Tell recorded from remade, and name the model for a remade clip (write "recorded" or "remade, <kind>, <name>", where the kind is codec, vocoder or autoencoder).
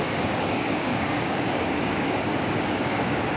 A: remade, codec, DAC